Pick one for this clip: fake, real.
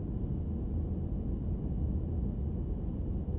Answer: real